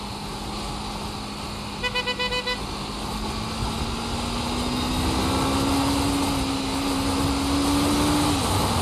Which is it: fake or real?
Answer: real